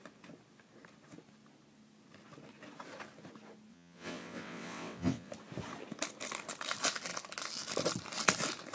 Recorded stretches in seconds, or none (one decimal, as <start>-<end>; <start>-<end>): 0.0-3.7; 5.3-8.7